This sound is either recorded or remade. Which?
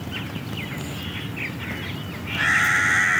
recorded